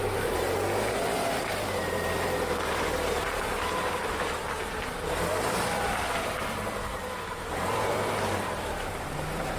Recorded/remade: remade